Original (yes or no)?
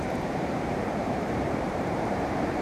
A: no